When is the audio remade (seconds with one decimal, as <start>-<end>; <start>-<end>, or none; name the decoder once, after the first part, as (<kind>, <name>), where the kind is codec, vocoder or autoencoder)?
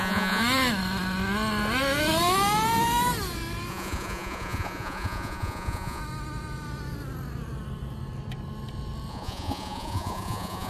0.0-0.4 (vocoder, Vocos); 3.7-6.0; 9.1-10.7